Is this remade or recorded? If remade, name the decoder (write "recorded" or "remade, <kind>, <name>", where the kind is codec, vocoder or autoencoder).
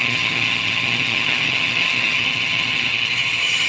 remade, vocoder, HiFi-GAN